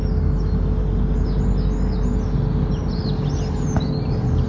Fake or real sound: real